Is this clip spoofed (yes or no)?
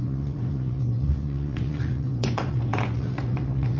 yes